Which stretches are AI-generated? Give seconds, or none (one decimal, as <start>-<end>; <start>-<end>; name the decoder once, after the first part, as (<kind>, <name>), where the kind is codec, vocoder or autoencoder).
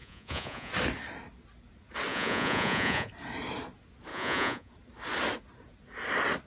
0.0-0.7 (vocoder, Vocos); 2.1-3.1; 4.1-4.7